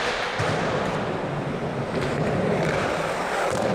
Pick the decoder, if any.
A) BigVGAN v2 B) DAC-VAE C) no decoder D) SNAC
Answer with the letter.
A